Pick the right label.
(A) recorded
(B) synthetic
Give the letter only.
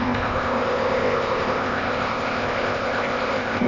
B